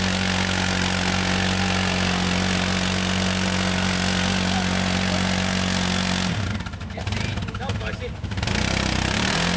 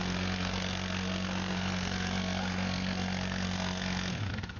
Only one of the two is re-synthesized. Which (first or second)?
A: second